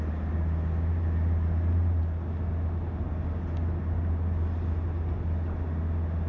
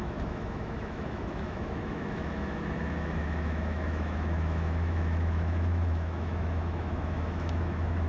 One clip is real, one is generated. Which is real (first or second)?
first